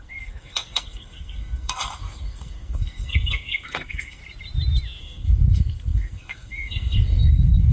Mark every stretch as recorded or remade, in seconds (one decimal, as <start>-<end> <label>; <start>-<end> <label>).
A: 0.0-4.2 remade; 4.2-5.0 recorded; 5.0-7.7 remade